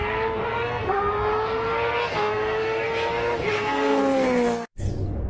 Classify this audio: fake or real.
fake